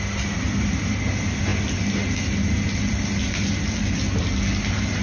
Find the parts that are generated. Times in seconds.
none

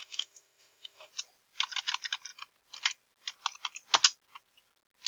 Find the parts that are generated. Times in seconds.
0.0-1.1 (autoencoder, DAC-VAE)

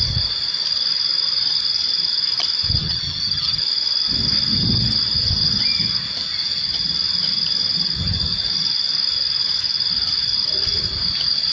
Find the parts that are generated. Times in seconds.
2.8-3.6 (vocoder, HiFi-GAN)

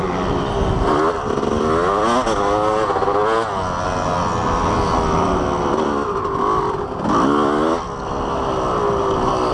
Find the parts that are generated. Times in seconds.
none

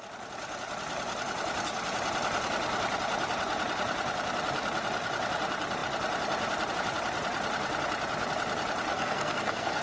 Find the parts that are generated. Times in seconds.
8.9-9.8 (codec, SNAC)

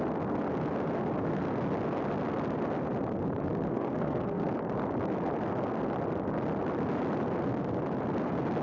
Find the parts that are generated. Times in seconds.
3.7-4.5 (codec, SNAC)

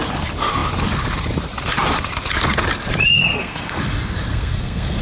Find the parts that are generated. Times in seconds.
3.3-3.8 (codec, SNAC); 4.3-5.0

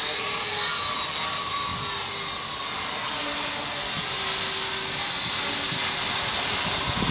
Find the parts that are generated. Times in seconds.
none